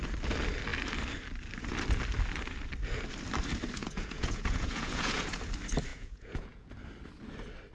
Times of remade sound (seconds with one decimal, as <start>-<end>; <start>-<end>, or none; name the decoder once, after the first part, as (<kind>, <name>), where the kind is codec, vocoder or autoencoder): 3.8-5.4 (vocoder, Vocos); 5.9-6.7

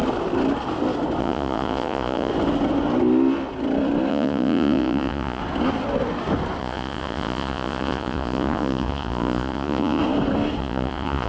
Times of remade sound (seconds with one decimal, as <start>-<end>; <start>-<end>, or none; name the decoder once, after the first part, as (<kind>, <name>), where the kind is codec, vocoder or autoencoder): 1.2-2.3 (vocoder, Vocos); 4.1-5.4; 6.6-10.0; 10.6-11.3